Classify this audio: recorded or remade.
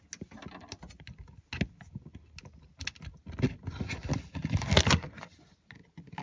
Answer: recorded